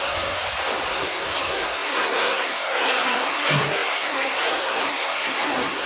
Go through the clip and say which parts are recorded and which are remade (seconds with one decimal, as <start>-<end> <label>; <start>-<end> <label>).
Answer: 0.0-0.4 remade; 0.4-0.9 recorded; 0.9-5.9 remade